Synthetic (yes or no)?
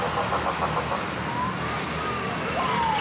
no